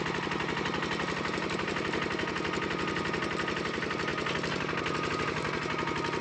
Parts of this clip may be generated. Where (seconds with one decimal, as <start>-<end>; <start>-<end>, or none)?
none